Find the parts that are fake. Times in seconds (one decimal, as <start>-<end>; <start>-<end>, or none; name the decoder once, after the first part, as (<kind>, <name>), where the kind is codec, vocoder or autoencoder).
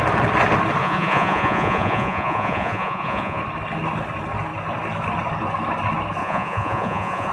0.8-3.4 (vocoder, Vocos); 6.2-7.3